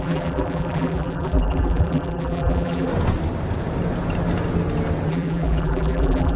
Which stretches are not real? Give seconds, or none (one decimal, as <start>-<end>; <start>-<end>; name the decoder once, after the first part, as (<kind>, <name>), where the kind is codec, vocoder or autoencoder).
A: 0.0-2.9 (vocoder, BigVGAN v2); 5.1-6.4

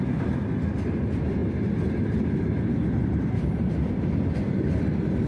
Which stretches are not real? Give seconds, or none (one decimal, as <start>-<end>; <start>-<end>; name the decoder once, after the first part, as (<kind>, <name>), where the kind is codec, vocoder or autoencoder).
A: 0.0-1.4 (vocoder, BigVGAN v2); 2.4-5.3

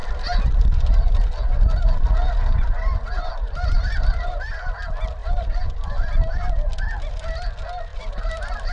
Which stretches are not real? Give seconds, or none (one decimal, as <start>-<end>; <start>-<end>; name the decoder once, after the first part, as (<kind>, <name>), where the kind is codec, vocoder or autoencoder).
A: 5.2-6.1 (vocoder, BigVGAN v2); 7.9-8.7

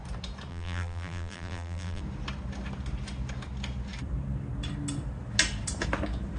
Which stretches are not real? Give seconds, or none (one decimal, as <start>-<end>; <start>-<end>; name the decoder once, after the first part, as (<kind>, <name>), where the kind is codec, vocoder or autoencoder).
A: 0.5-2.0 (vocoder, BigVGAN v2)

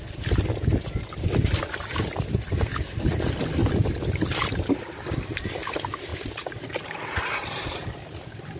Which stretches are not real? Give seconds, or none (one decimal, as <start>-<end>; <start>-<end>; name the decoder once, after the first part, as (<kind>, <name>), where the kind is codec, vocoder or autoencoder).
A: 6.1-8.6 (vocoder, BigVGAN v2)

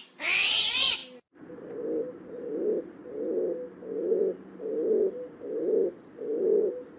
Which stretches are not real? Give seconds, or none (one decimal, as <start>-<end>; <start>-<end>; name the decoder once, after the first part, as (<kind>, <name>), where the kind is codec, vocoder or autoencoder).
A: 0.0-1.0 (vocoder, BigVGAN v2); 2.1-3.0; 4.0-7.0

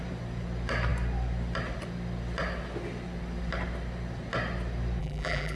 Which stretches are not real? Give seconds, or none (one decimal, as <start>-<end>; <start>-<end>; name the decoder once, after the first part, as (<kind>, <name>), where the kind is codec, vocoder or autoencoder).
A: 5.0-5.6 (vocoder, BigVGAN v2)